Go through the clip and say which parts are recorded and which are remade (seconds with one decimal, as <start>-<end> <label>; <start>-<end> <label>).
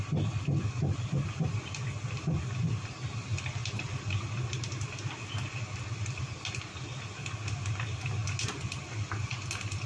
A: 0.0-9.9 recorded